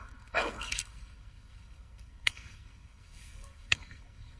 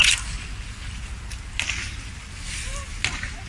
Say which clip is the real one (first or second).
second